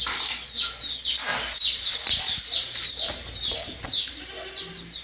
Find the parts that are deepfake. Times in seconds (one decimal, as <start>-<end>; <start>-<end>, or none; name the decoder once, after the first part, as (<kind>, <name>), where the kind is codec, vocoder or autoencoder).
1.3-4.3 (vocoder, BigVGAN v2)